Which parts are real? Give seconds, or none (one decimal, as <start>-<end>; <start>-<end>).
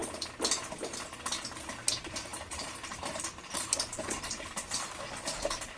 0.0-0.8